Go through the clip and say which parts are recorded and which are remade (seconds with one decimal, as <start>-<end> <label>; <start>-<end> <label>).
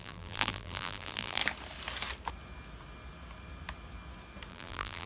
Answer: 0.0-1.4 remade; 1.4-4.5 recorded; 4.5-5.1 remade